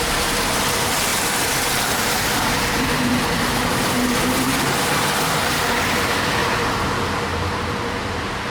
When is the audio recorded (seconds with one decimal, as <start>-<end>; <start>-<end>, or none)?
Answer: none